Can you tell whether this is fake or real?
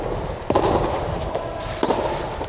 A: real